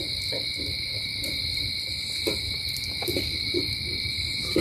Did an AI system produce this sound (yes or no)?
yes